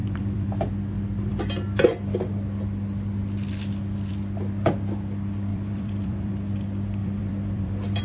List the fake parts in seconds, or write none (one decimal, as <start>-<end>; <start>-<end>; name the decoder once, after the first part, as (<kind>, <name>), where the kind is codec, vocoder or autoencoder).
0.0-0.7 (vocoder, BigVGAN v2); 5.5-6.3; 7.0-8.0